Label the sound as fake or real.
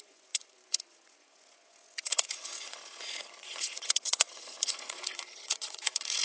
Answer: fake